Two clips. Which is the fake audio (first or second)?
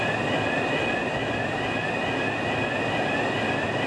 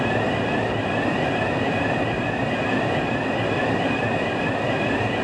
second